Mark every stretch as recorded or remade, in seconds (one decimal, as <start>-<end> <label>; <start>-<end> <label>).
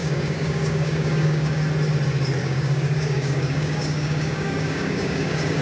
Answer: 0.0-1.6 remade; 1.6-2.4 recorded; 2.4-5.6 remade